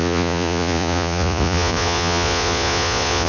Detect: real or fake fake